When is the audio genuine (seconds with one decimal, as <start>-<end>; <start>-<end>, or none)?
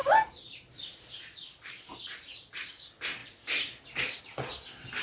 1.9-5.0